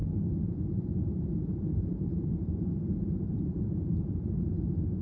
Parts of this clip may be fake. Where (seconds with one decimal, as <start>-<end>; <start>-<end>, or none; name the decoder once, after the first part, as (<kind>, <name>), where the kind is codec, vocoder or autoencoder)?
0.0-5.0 (vocoder, BigVGAN v2)